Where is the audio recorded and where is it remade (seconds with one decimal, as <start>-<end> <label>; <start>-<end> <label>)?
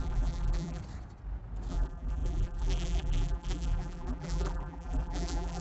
0.0-0.8 remade; 0.8-1.7 recorded; 1.7-5.6 remade